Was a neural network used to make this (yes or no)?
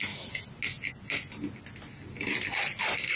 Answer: no